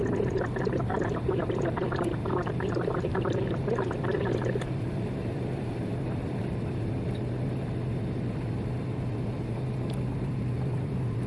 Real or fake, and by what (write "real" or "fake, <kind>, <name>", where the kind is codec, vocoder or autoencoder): fake, vocoder, BigVGAN v2